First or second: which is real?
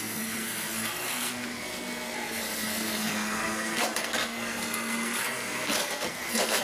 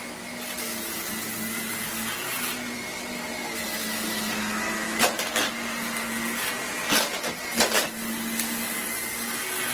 second